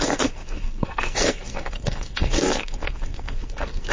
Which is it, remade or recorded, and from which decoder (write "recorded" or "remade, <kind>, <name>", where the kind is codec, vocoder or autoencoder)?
remade, codec, SNAC